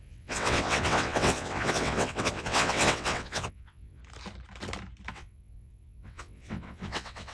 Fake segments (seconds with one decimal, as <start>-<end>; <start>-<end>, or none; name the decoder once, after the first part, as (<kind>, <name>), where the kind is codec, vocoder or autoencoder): 0.0-4.0 (vocoder, WaveNeXt); 5.1-7.3